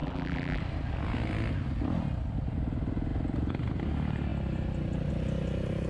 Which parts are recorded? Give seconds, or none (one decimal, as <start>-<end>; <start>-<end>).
0.6-5.9